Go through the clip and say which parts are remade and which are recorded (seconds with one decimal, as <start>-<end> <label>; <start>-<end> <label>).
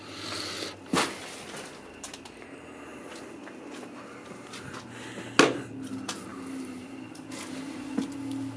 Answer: 0.0-8.6 recorded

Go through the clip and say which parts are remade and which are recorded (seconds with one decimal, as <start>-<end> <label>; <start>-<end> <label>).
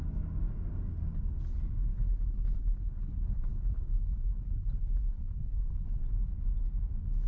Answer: 0.0-1.9 recorded; 1.9-6.0 remade; 6.0-7.3 recorded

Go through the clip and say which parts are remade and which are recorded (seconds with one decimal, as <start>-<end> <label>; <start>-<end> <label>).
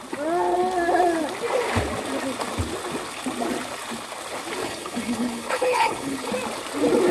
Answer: 0.0-4.6 recorded; 4.6-6.3 remade; 6.3-7.1 recorded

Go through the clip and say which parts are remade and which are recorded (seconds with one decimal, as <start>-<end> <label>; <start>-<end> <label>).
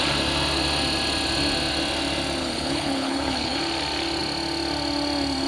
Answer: 0.0-2.4 recorded; 2.4-3.6 remade; 3.6-5.5 recorded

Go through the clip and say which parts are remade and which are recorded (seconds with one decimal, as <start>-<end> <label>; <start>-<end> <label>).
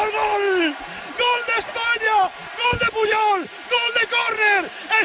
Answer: 0.0-5.0 recorded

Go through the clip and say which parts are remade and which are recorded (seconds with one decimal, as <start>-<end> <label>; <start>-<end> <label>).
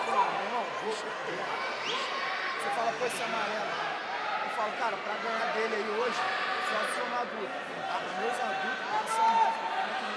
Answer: 0.0-10.2 recorded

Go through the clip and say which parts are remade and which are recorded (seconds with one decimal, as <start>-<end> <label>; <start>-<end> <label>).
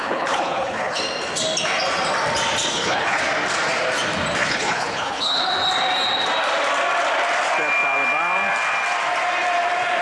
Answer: 0.0-1.0 remade; 1.0-2.7 recorded; 2.7-3.2 remade; 3.2-4.4 recorded; 4.4-5.4 remade; 5.4-10.0 recorded